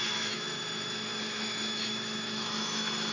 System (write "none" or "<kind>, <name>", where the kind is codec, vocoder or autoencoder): autoencoder, DAC-VAE